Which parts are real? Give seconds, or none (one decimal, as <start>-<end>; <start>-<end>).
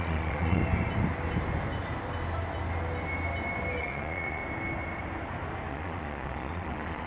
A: 0.6-3.8; 4.4-5.7